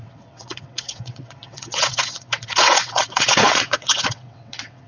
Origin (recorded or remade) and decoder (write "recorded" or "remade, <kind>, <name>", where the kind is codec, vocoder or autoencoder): remade, vocoder, WaveNeXt